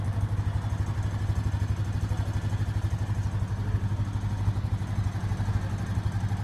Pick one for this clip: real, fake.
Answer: real